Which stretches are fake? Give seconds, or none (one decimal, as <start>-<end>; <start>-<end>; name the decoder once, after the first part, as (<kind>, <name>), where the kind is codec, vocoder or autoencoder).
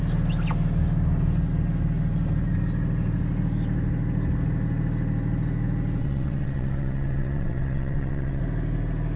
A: 6.0-8.4 (vocoder, WaveNeXt)